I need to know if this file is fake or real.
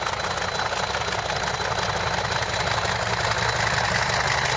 real